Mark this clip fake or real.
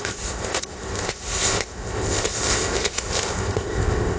fake